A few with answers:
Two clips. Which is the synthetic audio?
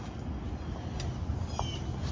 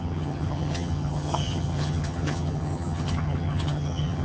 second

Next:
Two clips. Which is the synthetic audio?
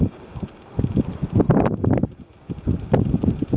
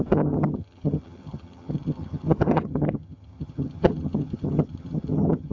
second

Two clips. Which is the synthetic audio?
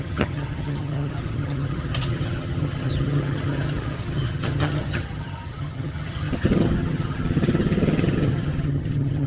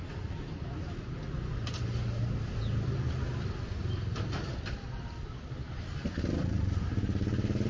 first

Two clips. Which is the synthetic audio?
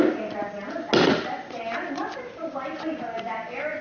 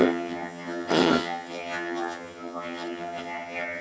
second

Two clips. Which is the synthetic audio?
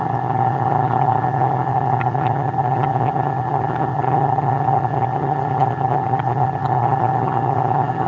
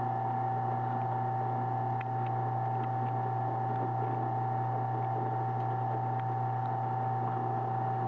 first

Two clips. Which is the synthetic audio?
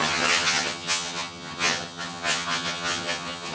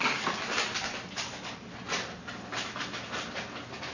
first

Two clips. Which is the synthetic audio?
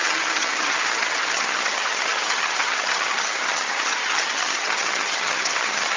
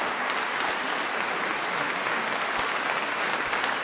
first